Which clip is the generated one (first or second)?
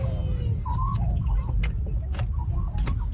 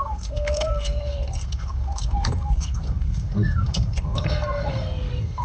second